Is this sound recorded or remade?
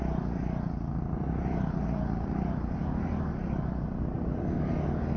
recorded